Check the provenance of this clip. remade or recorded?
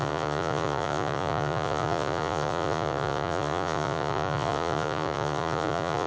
remade